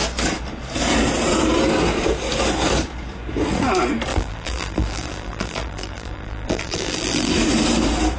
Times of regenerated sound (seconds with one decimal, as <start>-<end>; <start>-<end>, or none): 4.1-7.3